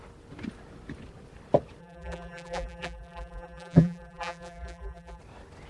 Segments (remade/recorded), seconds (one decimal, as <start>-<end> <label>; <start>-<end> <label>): 0.0-1.8 recorded; 1.8-5.2 remade; 5.2-5.7 recorded